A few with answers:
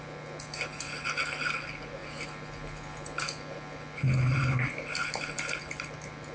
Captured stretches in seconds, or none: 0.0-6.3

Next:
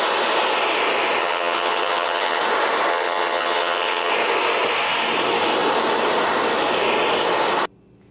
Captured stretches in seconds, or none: 0.0-1.2; 2.4-2.9; 4.1-8.1